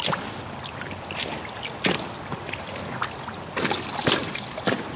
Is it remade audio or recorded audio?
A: recorded